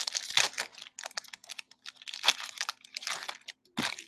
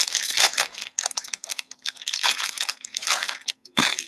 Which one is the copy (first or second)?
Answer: second